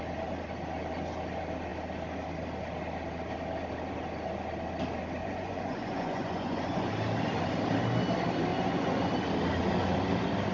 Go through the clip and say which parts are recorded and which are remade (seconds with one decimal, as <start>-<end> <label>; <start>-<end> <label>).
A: 0.0-5.2 recorded; 5.2-6.9 remade; 6.9-8.5 recorded; 8.5-9.1 remade; 9.1-10.5 recorded